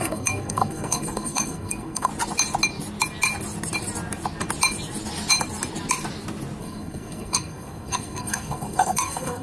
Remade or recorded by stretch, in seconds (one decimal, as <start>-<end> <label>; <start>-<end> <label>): 0.0-2.1 remade; 2.1-6.6 recorded; 6.6-9.4 remade